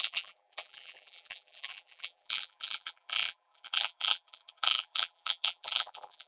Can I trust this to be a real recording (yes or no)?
no